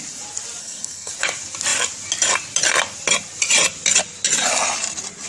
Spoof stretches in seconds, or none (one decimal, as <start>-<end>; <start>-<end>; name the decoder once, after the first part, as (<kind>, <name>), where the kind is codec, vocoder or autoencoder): 0.6-1.1 (codec, SNAC)